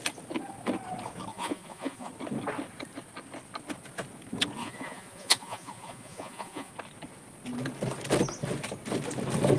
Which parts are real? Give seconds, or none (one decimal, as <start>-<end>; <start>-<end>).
0.0-1.3; 2.1-4.6; 6.7-9.6